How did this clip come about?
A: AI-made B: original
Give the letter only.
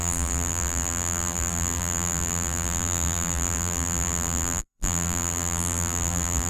A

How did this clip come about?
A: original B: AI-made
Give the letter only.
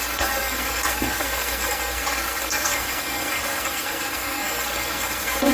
B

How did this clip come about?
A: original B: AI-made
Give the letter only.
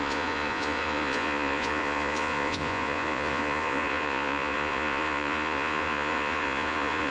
B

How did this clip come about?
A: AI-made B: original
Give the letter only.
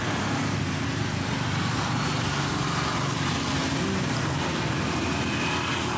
B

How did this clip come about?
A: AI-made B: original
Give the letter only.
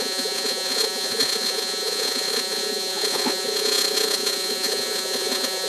A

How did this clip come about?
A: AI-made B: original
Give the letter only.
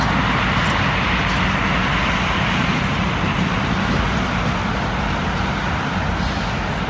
B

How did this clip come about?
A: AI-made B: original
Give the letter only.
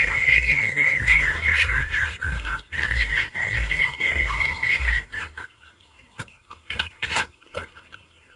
A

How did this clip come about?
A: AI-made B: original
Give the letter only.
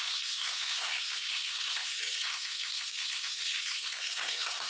A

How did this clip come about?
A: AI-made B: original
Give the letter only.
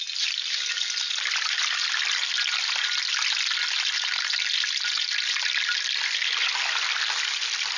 B